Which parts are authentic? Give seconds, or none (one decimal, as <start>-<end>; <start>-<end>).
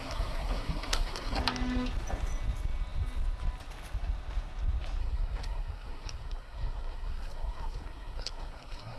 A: 1.4-5.0